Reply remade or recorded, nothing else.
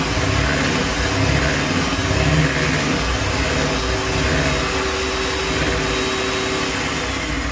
recorded